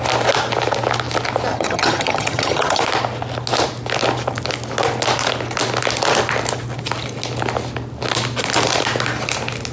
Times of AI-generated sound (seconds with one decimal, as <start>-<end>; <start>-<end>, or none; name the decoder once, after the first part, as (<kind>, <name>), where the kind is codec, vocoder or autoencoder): 1.5-2.8 (vocoder, HiFi-GAN)